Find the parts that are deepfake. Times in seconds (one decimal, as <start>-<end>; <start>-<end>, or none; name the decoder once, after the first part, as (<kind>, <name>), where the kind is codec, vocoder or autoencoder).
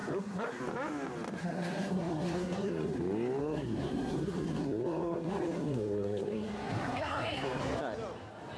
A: 0.0-0.6 (codec, SNAC); 1.4-3.0; 3.4-7.6